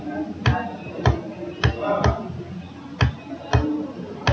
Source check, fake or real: real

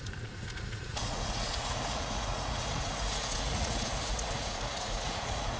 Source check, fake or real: fake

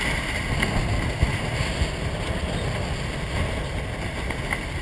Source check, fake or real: real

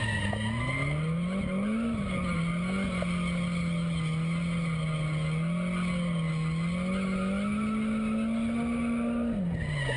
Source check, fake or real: real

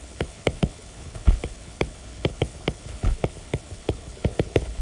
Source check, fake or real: fake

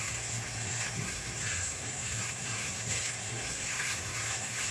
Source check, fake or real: fake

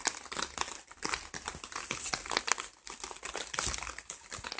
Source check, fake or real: real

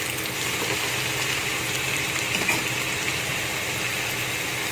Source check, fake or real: real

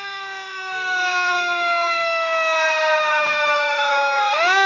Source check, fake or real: fake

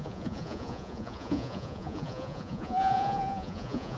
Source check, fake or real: fake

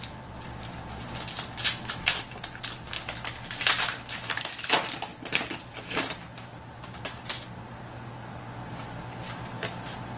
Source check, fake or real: real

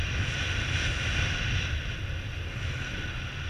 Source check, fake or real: real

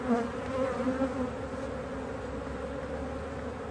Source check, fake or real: real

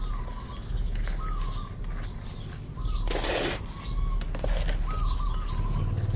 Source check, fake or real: real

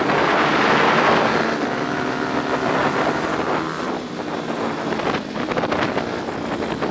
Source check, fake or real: real